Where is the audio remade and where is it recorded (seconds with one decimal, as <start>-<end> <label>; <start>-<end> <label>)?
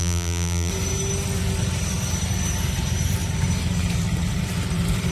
0.0-0.7 remade; 0.7-5.1 recorded